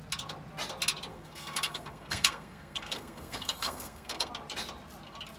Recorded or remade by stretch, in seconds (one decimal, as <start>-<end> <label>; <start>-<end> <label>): 0.0-1.1 recorded; 1.1-4.3 remade; 4.3-5.4 recorded